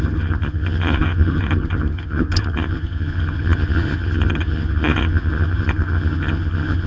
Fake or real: fake